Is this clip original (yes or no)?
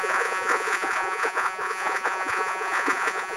no